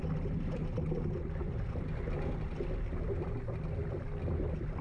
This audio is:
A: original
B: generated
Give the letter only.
A